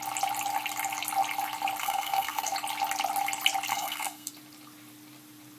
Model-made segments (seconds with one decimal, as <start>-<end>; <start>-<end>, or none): 1.8-2.5; 3.7-4.3